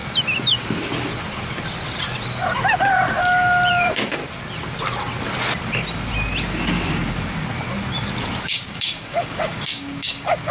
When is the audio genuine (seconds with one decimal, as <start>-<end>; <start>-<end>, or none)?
0.0-3.7; 4.2-8.4